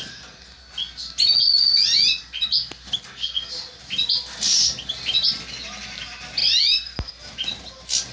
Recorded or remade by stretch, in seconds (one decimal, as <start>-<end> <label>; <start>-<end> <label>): 0.0-8.1 recorded